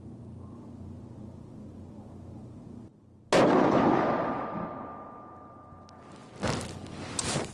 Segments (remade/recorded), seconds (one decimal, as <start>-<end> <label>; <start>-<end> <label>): 0.0-7.5 recorded

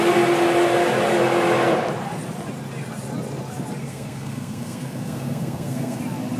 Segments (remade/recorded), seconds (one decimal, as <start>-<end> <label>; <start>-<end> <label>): 0.0-3.8 recorded; 3.8-6.0 remade; 6.0-6.4 recorded